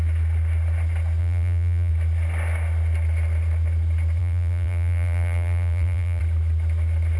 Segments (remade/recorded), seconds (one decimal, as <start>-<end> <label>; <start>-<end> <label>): 0.0-1.2 recorded; 1.2-1.9 remade; 1.9-4.2 recorded; 4.2-6.2 remade; 6.2-7.2 recorded